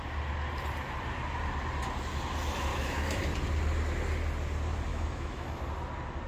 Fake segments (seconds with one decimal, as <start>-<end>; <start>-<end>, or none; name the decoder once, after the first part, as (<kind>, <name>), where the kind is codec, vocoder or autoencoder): 2.7-3.2 (autoencoder, DAC-VAE); 4.9-5.6